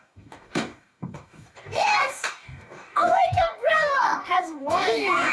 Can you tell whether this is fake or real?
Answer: fake